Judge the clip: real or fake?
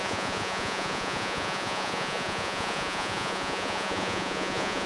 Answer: fake